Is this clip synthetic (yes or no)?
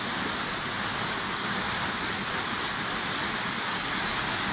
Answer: no